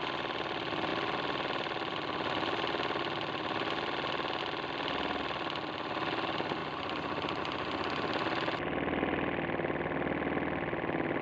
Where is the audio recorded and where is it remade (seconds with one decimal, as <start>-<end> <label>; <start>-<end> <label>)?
0.0-11.2 recorded